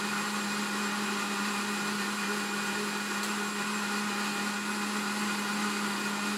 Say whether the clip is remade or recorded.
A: recorded